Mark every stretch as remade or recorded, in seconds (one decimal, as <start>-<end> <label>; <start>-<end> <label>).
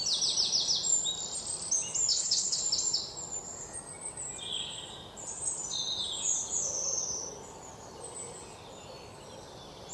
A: 0.0-2.1 recorded; 2.1-2.6 remade; 2.6-9.9 recorded